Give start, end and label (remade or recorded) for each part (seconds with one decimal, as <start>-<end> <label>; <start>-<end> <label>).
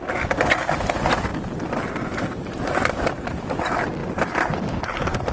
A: 0.0-5.3 recorded